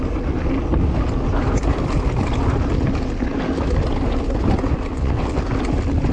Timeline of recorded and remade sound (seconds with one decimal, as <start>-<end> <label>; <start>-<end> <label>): 0.0-4.9 recorded; 4.9-5.4 remade; 5.4-6.1 recorded